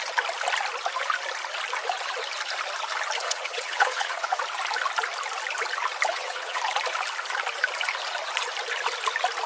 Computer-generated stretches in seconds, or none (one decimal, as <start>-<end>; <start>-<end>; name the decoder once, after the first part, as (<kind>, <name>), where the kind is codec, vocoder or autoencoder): 3.2-4.4 (vocoder, WaveNeXt); 6.1-6.6